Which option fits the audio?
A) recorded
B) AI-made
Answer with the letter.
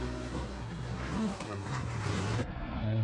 B